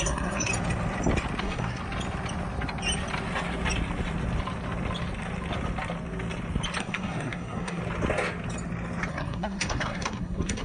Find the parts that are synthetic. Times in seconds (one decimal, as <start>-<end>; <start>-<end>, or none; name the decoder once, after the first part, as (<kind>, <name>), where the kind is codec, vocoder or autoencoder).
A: 0.0-0.5 (codec, SNAC); 1.4-1.8; 6.8-7.8; 9.1-10.6